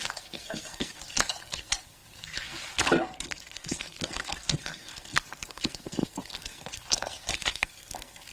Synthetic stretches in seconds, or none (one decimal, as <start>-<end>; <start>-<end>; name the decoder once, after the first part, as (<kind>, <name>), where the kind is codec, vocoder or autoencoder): 0.0-8.3 (codec, SNAC)